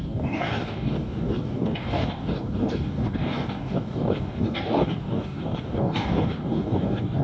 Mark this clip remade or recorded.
remade